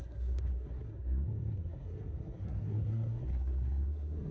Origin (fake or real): fake